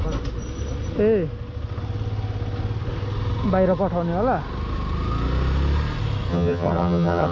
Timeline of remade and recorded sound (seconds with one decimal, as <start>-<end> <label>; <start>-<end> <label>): 0.0-6.3 recorded; 6.3-7.3 remade